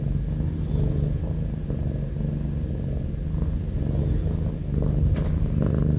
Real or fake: real